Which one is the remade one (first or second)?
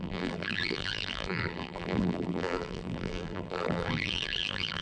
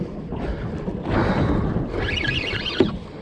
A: first